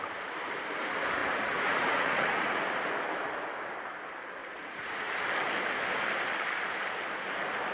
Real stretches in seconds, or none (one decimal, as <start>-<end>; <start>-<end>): 0.0-1.2; 2.6-4.4; 5.1-7.7